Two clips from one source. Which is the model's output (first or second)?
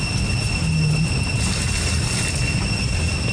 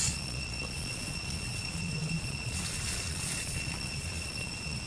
second